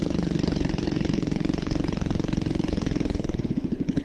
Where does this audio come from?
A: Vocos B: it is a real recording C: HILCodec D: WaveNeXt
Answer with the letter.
C